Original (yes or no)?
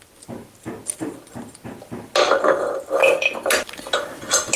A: yes